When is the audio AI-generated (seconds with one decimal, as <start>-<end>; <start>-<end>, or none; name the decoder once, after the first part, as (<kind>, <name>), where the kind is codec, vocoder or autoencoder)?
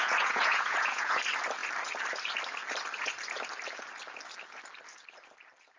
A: 0.0-1.2 (vocoder, Vocos)